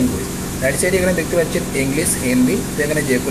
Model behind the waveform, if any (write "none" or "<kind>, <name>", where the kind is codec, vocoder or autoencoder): autoencoder, DAC-VAE